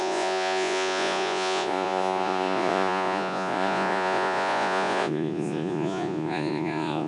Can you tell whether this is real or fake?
fake